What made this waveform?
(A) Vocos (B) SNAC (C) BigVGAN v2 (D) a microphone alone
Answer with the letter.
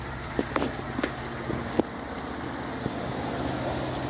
D